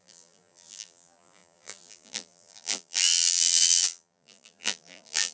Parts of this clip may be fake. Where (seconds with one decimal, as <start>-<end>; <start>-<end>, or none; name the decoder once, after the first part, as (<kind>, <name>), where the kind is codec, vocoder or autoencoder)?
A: 0.0-5.3 (vocoder, BigVGAN v2)